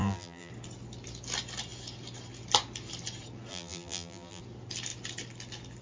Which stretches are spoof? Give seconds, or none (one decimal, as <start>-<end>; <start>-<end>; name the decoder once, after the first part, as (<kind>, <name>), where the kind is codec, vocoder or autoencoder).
0.0-0.5 (vocoder, BigVGAN v2); 3.5-4.4